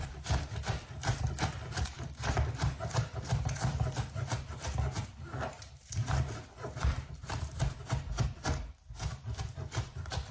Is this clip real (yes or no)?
no